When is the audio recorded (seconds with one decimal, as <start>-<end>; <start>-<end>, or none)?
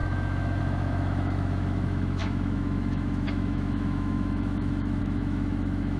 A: none